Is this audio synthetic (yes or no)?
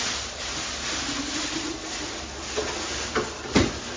no